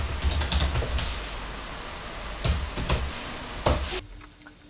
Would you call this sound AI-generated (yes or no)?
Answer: no